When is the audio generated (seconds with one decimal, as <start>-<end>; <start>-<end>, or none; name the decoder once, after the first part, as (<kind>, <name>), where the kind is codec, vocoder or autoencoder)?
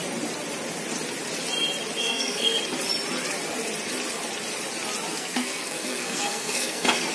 2.0-2.6 (codec, SNAC); 5.1-7.1